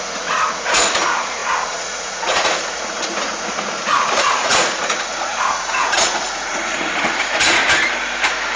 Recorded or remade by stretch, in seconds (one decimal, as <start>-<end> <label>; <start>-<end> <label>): 0.0-7.6 remade; 7.6-8.6 recorded